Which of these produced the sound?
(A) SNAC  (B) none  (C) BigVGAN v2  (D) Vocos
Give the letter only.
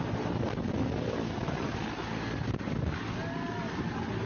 B